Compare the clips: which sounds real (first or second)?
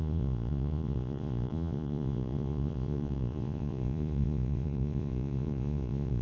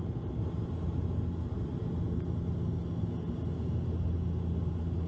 second